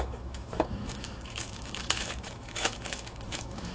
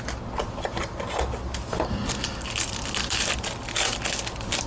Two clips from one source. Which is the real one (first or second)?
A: second